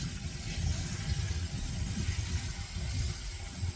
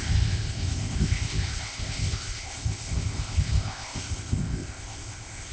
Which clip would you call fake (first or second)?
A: second